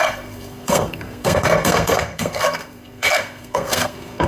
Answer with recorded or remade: remade